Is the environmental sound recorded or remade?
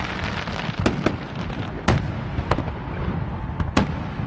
recorded